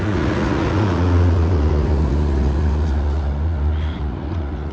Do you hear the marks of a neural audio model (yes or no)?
yes